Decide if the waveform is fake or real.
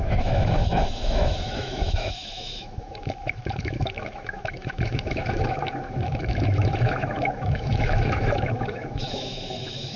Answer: fake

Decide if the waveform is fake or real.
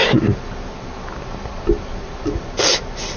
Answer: real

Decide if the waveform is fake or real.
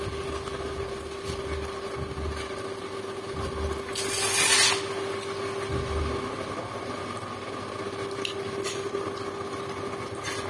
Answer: real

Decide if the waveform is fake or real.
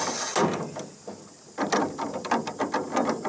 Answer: real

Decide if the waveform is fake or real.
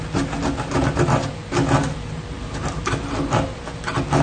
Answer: real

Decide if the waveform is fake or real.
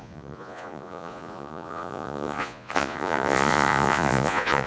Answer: fake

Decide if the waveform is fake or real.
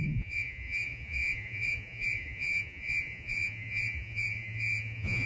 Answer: fake